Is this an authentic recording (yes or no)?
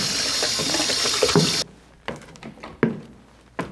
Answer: yes